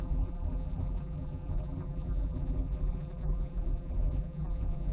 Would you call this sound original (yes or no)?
no